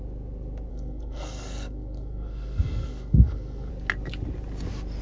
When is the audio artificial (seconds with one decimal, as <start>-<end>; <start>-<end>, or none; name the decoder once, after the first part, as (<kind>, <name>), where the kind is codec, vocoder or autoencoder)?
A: 0.7-3.7 (codec, SNAC)

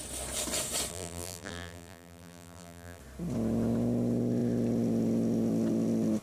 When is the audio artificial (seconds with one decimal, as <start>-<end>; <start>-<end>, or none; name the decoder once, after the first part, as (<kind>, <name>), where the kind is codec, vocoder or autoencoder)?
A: 0.9-3.0 (vocoder, BigVGAN v2)

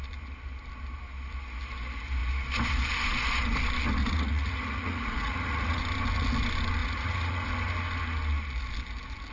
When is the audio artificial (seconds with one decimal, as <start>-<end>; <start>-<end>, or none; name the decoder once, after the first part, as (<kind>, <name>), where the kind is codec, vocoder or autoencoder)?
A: 4.0-5.8 (vocoder, Vocos); 6.8-7.5

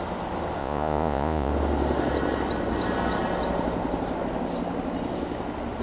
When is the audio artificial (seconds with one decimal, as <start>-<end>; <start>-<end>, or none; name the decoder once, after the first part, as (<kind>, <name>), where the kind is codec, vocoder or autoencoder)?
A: 0.6-1.5 (vocoder, Vocos)

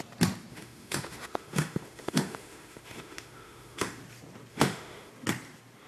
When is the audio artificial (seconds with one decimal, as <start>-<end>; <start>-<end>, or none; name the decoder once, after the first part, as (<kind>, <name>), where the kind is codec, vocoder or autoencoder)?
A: 0.5-4.0 (autoencoder, DAC-VAE); 4.5-5.1

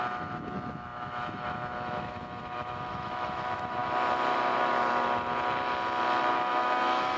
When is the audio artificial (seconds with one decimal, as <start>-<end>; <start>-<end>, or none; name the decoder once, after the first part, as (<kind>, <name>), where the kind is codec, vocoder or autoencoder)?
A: 0.0-3.8 (autoencoder, DAC-VAE); 6.3-7.2

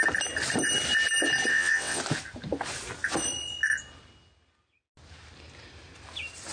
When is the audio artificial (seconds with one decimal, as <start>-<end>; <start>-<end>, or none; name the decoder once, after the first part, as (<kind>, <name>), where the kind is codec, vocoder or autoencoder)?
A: 1.5-2.0 (vocoder, WaveNeXt)